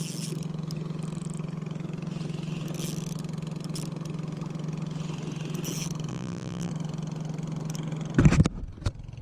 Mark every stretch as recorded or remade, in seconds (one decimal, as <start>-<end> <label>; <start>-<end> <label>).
0.0-6.1 recorded; 6.1-6.7 remade; 6.7-9.2 recorded